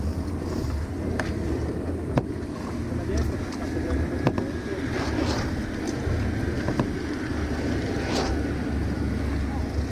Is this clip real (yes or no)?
yes